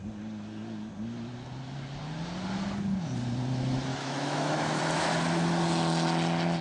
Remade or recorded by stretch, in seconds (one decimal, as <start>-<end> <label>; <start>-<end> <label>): 0.0-3.9 recorded; 3.9-4.8 remade; 4.8-6.6 recorded